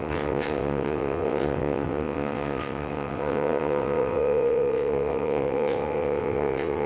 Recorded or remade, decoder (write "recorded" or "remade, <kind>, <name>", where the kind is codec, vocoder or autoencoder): remade, vocoder, WaveNeXt